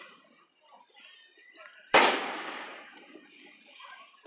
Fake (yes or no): no